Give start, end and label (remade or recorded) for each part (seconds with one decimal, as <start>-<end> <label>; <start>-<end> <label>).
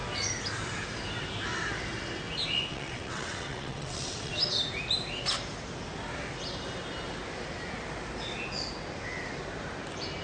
0.0-2.7 recorded; 2.7-4.3 remade; 4.3-10.2 recorded